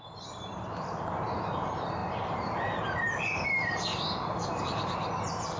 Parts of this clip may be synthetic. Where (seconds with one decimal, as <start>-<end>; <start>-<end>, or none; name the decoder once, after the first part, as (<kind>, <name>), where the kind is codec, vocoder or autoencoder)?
0.0-5.6 (vocoder, BigVGAN v2)